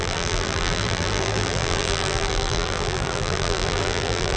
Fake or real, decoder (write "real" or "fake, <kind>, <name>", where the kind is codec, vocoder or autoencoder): fake, vocoder, BigVGAN v2